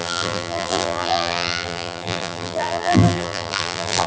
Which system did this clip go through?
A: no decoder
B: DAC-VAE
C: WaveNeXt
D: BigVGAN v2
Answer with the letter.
D